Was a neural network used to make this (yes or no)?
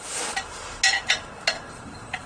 no